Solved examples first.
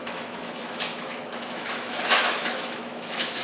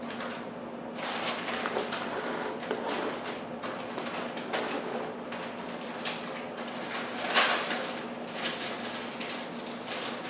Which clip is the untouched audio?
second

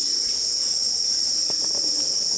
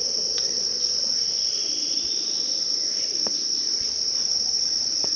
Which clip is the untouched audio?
first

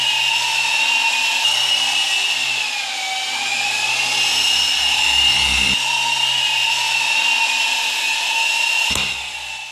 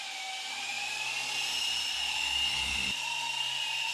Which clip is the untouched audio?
first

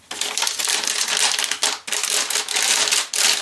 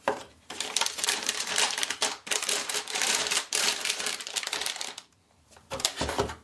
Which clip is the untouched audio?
first